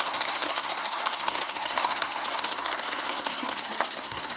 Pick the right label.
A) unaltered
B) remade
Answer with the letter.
B